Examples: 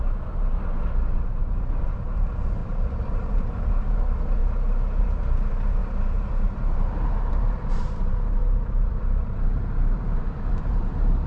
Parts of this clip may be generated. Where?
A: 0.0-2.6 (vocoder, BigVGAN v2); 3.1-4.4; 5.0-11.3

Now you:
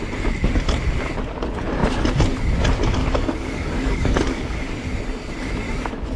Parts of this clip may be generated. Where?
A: 3.0-4.7 (codec, DAC)

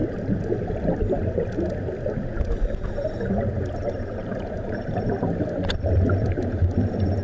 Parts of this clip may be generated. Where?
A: 3.9-7.2 (vocoder, BigVGAN v2)

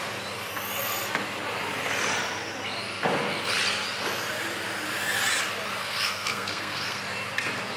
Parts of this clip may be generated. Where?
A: 5.8-7.0 (codec, SNAC)

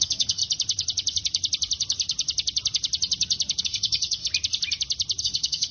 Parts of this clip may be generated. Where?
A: 0.0-0.4 (codec, SNAC); 3.6-4.2; 5.2-5.7

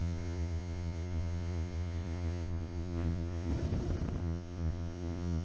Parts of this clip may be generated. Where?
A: 0.0-3.5 (vocoder, Vocos); 4.2-5.4

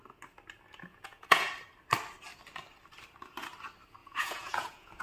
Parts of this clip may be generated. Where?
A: 0.9-1.5 (vocoder, Vocos); 4.0-5.0